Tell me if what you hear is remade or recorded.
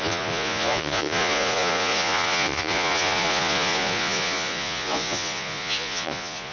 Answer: remade